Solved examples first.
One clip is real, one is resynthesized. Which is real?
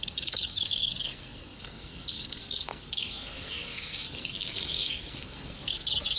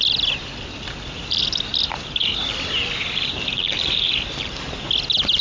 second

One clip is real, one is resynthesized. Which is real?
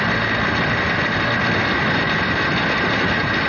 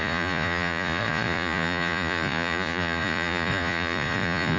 first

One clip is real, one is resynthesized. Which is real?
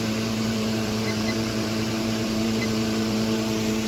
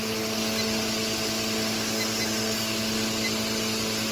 second